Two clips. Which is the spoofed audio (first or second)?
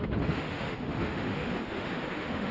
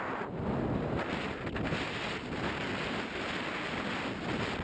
first